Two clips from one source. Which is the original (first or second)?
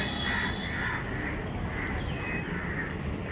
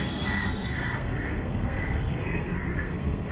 first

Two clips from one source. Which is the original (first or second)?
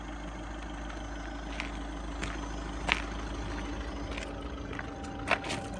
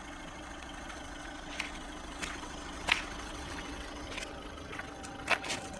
first